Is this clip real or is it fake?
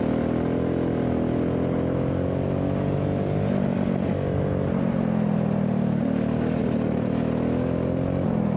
real